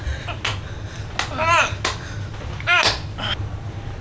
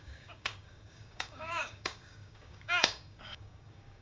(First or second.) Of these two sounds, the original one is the first